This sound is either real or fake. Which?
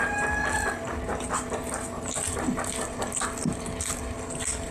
real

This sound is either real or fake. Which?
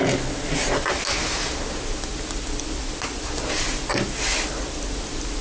real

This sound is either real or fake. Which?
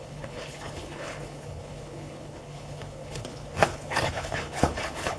fake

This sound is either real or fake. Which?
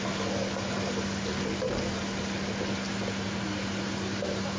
real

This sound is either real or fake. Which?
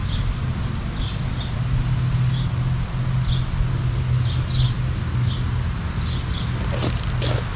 real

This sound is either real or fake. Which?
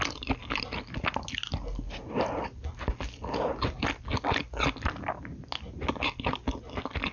real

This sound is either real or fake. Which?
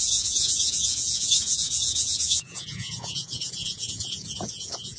fake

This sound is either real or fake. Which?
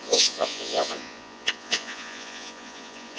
fake